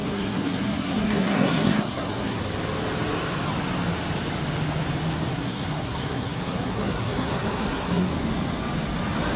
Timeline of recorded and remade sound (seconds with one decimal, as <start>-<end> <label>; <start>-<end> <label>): 0.0-2.4 remade; 2.4-5.3 recorded; 5.3-8.1 remade; 8.1-9.4 recorded